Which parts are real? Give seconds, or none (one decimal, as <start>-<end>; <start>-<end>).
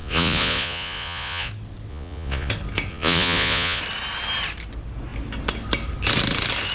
1.5-1.9; 2.5-2.9; 3.8-6.7